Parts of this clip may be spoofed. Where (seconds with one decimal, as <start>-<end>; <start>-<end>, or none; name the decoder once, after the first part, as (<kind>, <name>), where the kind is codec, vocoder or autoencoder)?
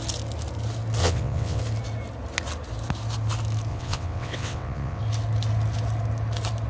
1.0-1.6 (vocoder, WaveNeXt); 3.7-5.0